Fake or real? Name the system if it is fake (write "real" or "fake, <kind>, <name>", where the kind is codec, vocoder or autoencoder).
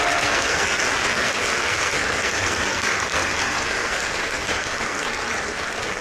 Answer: fake, codec, SNAC